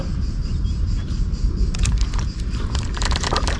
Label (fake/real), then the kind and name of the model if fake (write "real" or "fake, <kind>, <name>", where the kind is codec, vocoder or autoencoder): real